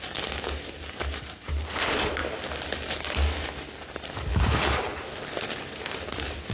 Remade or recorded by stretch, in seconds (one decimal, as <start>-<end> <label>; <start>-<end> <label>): 0.0-6.5 recorded